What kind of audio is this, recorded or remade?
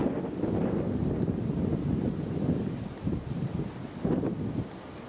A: recorded